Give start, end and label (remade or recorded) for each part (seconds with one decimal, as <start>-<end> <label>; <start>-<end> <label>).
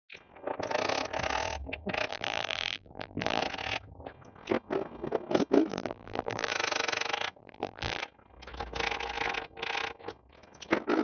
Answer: 0.0-2.1 recorded; 2.1-3.4 remade; 3.4-5.7 recorded; 5.7-6.5 remade; 6.5-7.4 recorded; 7.4-8.0 remade; 8.0-11.0 recorded